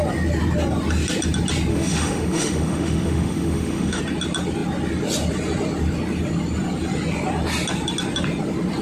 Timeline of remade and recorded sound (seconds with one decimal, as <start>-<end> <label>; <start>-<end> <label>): 0.0-1.7 recorded; 1.7-4.0 remade; 4.0-8.8 recorded